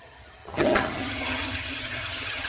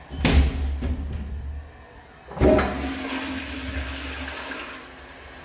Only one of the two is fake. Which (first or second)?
first